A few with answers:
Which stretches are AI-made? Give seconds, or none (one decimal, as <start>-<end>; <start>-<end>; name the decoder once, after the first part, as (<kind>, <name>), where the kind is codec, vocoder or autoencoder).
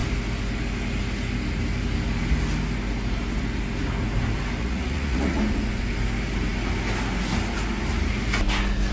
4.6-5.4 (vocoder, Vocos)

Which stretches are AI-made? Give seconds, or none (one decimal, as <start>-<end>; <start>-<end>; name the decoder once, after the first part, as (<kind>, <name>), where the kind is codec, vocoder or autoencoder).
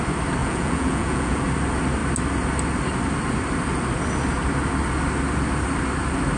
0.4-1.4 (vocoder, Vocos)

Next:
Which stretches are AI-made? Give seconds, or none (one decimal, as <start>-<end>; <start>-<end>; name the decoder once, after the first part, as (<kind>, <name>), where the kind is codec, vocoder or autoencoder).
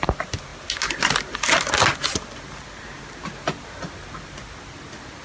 none